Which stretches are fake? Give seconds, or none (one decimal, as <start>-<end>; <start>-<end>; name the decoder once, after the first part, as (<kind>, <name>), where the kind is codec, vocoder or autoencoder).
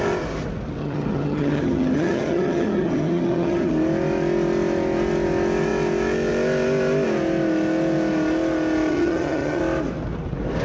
0.8-3.7 (vocoder, HiFi-GAN); 8.9-9.6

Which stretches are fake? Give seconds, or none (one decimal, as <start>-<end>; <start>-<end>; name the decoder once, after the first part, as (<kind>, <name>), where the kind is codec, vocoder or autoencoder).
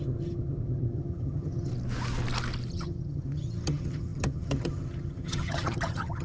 0.0-1.7 (vocoder, HiFi-GAN); 2.7-6.2